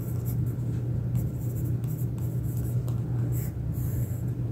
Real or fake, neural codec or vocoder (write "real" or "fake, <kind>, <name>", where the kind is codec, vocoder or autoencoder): real